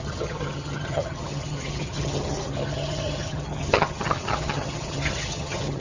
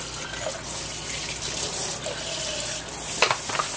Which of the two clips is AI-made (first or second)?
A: first